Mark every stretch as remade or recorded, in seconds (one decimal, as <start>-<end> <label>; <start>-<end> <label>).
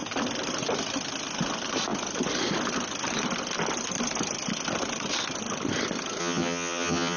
0.0-6.2 recorded; 6.2-7.2 remade